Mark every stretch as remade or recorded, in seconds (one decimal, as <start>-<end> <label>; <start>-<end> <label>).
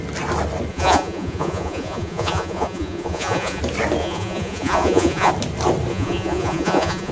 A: 0.0-0.7 recorded; 0.7-3.6 remade; 3.6-4.0 recorded; 4.0-5.3 remade; 5.3-5.9 recorded; 5.9-7.1 remade